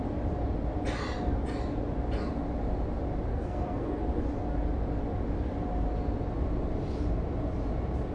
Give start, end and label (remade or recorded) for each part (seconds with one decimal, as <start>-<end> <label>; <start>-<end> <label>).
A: 0.0-3.3 recorded; 3.3-4.0 remade; 4.0-8.1 recorded